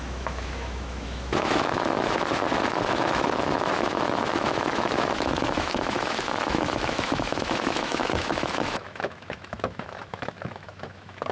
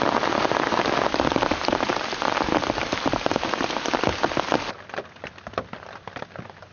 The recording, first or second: second